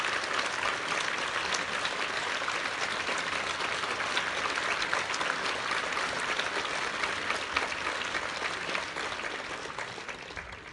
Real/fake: real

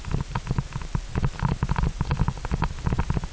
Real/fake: real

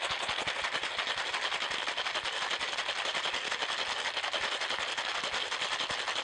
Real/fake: real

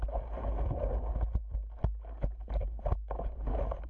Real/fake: real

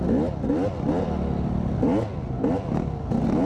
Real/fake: real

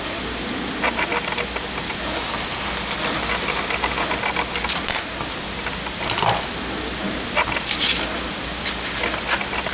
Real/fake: real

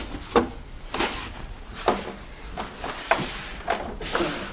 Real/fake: real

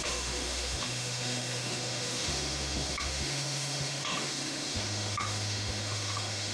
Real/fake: fake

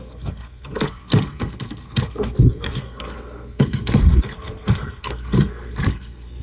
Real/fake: fake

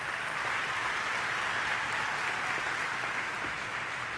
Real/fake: real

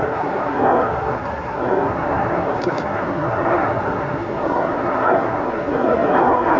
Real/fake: fake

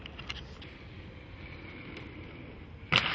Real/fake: real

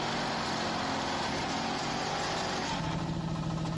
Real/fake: real